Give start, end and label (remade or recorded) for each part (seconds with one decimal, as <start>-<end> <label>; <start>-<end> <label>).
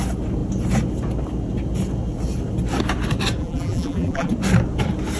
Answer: 0.0-3.4 recorded; 3.4-4.3 remade; 4.3-5.2 recorded